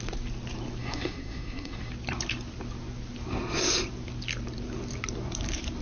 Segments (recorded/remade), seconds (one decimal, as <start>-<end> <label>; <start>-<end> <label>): 0.0-0.8 recorded; 0.8-1.9 remade; 1.9-5.8 recorded